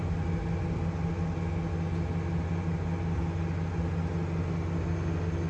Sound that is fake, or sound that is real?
real